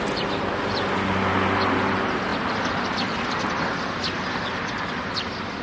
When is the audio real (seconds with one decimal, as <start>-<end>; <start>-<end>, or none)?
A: 0.0-5.6